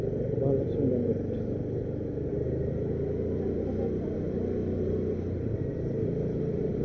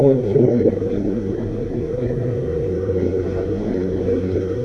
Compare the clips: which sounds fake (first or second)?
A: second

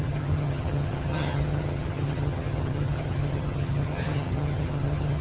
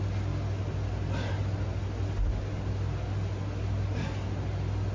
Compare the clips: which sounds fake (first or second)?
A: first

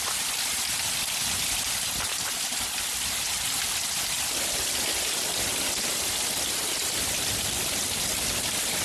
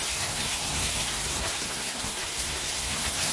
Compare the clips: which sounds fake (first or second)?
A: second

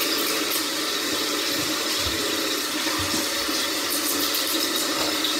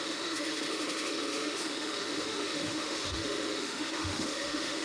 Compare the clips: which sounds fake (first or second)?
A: second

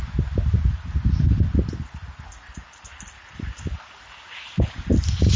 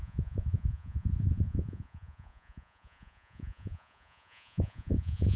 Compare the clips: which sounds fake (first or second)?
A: second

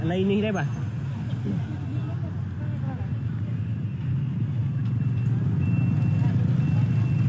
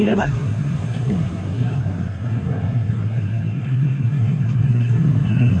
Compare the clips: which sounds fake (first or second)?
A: second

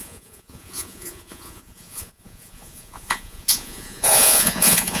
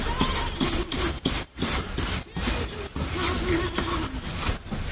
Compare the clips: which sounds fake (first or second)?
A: first